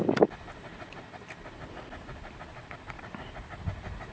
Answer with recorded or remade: recorded